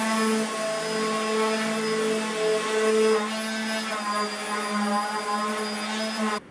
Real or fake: real